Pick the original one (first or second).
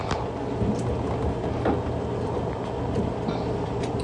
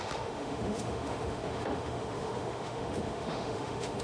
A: first